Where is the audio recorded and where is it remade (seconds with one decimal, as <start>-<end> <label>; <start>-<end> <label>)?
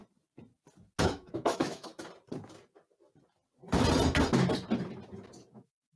0.0-1.0 recorded; 1.0-1.9 remade; 1.9-5.5 recorded; 5.5-6.0 remade